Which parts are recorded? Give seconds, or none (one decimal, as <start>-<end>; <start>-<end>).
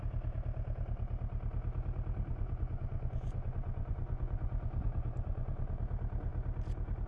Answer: 0.0-2.3; 5.8-7.1